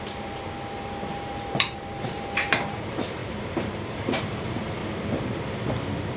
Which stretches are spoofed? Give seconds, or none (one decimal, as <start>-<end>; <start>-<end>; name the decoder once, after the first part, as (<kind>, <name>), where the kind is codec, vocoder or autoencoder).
0.0-4.8 (vocoder, BigVGAN v2)